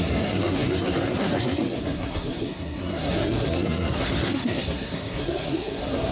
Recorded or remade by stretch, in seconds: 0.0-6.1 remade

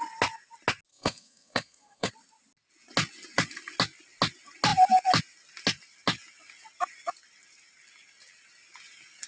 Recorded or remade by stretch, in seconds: 0.0-0.9 recorded; 0.9-2.1 remade; 2.1-9.3 recorded

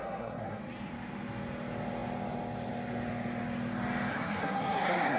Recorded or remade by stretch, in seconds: 0.0-0.6 remade; 0.6-4.1 recorded; 4.1-5.2 remade

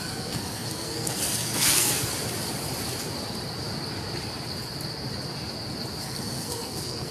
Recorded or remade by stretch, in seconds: 0.0-2.1 remade; 2.1-6.0 recorded; 6.0-7.1 remade

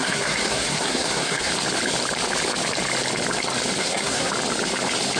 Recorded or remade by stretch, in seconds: 0.0-1.5 remade; 1.5-3.8 recorded; 3.8-4.3 remade; 4.3-5.2 recorded